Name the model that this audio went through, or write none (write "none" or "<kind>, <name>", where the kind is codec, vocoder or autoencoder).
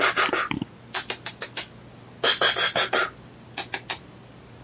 none